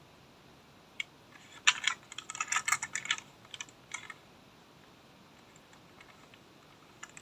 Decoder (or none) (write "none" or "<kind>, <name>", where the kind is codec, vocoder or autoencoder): none